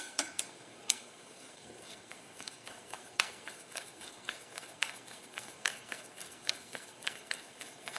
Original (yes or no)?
no